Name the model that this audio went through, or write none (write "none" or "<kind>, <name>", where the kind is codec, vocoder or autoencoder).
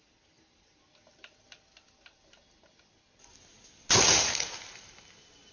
none